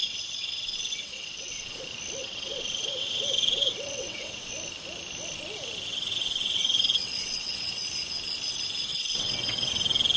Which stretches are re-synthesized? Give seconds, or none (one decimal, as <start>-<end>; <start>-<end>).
0.0-1.8; 2.2-4.5; 5.9-7.8; 8.9-9.7